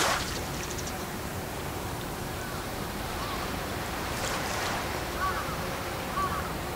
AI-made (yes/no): yes